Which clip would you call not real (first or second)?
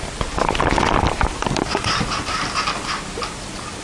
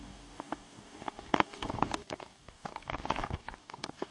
second